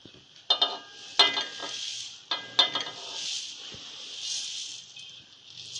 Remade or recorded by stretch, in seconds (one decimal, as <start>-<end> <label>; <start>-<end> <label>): 0.0-5.8 recorded